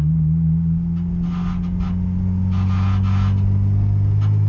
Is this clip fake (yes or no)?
no